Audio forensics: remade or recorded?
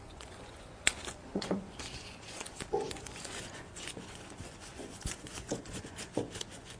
remade